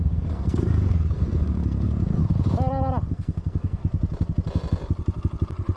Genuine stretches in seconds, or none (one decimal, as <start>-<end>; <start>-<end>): 2.2-3.1; 3.8-5.8